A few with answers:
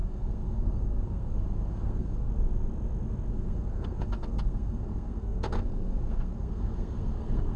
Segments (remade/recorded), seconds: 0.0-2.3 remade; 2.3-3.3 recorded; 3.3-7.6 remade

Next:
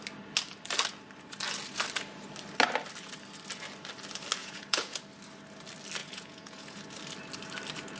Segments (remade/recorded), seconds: 0.0-4.4 recorded; 4.4-5.0 remade; 5.0-6.0 recorded; 6.0-6.8 remade; 6.8-8.0 recorded